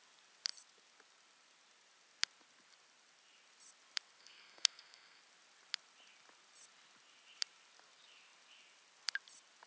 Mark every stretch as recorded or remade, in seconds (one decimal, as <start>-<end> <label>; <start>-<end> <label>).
0.0-4.2 recorded; 4.2-5.2 remade; 5.2-9.7 recorded